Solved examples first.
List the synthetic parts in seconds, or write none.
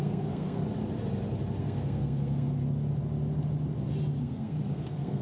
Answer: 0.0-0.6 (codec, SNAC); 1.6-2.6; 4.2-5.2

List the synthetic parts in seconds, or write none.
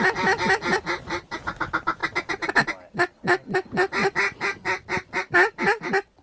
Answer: none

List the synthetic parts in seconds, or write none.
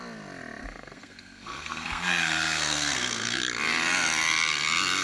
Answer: 0.6-3.4 (codec, SNAC)